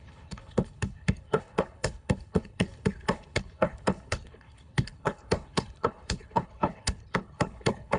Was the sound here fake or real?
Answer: fake